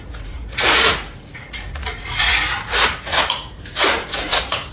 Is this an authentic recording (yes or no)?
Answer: no